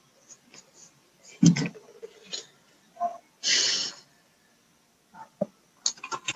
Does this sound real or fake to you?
real